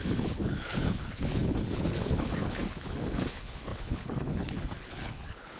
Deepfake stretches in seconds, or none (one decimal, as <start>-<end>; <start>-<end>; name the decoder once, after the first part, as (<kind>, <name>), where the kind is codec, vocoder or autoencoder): 0.0-5.6 (codec, HILCodec)